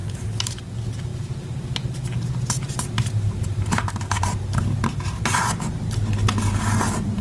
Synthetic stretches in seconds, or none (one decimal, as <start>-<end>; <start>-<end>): 0.0-0.6; 1.1-5.4